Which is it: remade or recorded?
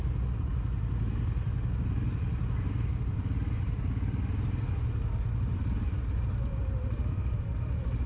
recorded